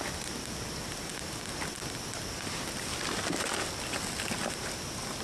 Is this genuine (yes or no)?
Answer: yes